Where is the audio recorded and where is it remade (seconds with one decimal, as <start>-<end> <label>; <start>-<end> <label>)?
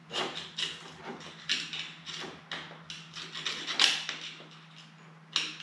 0.0-5.6 recorded